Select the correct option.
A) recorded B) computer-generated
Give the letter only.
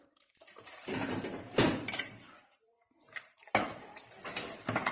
B